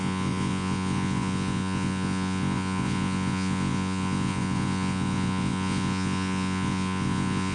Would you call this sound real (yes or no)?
no